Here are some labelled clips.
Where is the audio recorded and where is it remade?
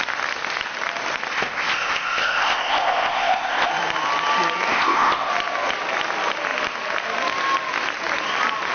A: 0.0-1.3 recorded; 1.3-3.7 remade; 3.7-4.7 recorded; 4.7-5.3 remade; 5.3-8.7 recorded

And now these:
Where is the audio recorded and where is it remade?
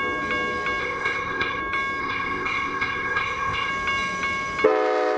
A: 0.0-0.8 recorded; 0.8-1.6 remade; 1.6-2.0 recorded; 2.0-3.7 remade; 3.7-5.2 recorded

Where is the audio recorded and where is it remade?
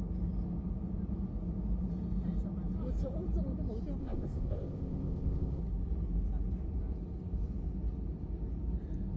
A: 0.0-4.0 recorded; 4.0-5.6 remade; 5.6-9.2 recorded